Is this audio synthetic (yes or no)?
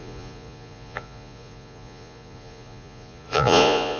yes